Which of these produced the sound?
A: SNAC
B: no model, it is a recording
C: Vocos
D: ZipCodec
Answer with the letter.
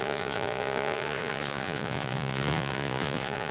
C